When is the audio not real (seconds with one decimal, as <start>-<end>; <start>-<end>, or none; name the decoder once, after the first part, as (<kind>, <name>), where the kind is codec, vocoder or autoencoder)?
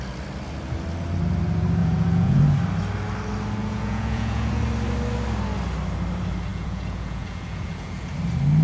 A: 1.8-2.4 (vocoder, Vocos); 3.6-4.6; 6.5-8.1